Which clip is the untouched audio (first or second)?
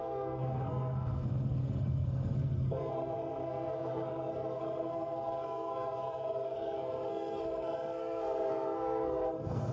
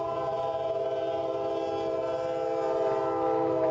second